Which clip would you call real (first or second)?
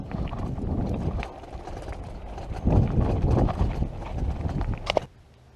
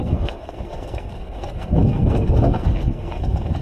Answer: first